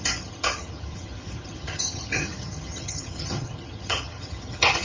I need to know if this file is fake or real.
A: fake